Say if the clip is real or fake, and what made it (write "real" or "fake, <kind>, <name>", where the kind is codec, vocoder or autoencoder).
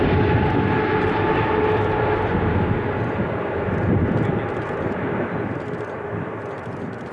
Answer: real